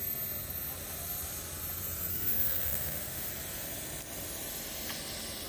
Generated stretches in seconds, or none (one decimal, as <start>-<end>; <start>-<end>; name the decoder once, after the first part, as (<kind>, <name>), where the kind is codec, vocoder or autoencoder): 2.1-3.3 (autoencoder, DAC-VAE)